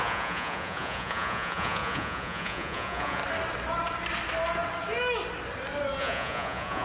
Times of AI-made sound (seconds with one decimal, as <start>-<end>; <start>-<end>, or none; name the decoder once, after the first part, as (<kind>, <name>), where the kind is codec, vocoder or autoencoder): 0.0-3.2 (vocoder, Vocos); 6.0-6.8